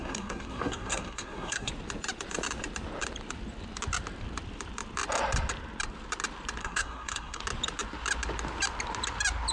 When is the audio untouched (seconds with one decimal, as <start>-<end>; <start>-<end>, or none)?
1.7-6.6; 7.4-9.5